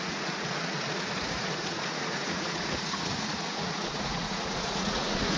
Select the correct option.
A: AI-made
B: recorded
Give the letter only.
A